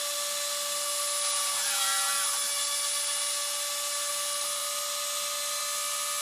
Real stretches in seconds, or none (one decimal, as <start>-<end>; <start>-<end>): 0.0-6.2